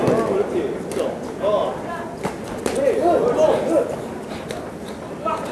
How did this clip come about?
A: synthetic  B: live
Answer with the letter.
B